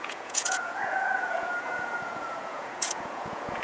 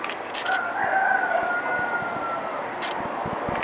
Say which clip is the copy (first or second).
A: first